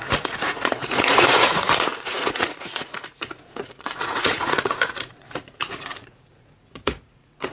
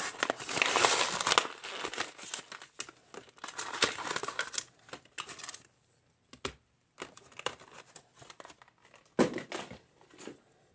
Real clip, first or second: second